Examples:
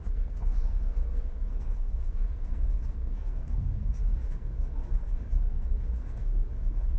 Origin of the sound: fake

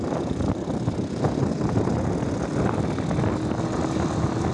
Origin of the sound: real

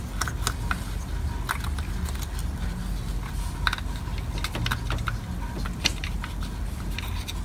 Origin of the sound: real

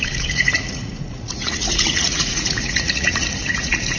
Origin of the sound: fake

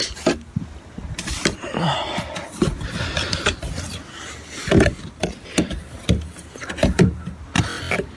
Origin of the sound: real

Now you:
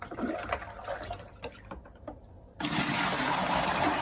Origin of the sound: fake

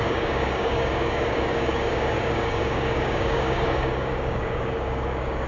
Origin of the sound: fake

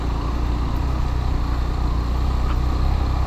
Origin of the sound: real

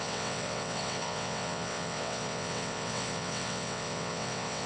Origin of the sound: fake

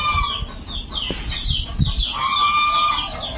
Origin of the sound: real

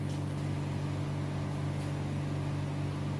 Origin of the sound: real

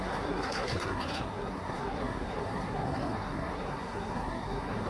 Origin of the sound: fake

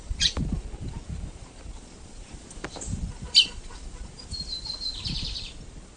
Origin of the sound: fake